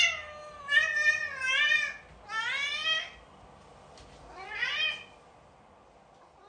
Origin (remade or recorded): recorded